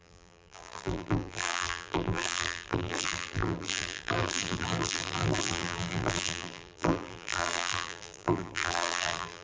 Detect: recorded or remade remade